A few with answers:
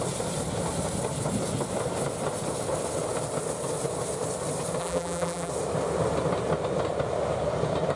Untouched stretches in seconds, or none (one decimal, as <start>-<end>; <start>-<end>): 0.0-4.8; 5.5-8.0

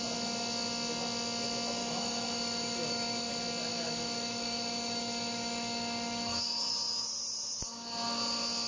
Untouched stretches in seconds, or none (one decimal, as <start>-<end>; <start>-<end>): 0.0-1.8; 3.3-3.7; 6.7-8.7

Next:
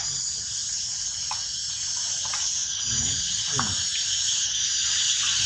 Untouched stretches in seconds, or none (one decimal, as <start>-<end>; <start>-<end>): 0.0-5.5